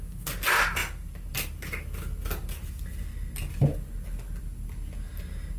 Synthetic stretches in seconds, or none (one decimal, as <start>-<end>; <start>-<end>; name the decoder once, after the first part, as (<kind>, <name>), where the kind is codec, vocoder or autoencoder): 0.8-1.6 (vocoder, BigVGAN v2)